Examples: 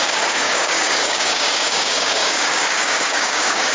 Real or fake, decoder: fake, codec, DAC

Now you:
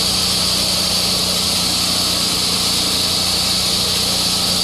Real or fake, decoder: real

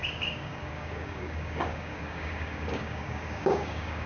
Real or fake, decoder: fake, codec, DAC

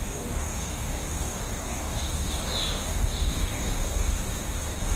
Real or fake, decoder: fake, codec, DAC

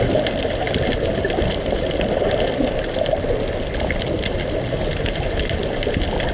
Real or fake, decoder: real